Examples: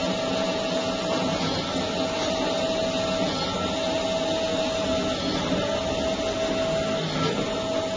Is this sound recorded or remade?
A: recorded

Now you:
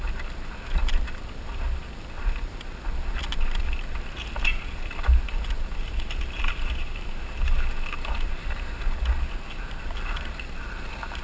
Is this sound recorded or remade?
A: recorded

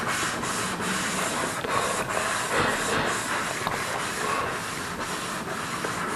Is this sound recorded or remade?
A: recorded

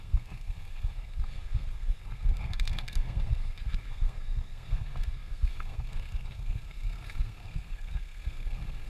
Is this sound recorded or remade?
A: remade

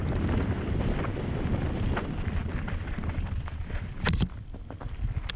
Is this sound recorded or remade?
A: recorded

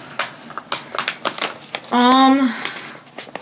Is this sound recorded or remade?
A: recorded